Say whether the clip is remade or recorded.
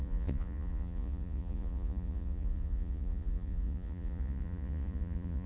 remade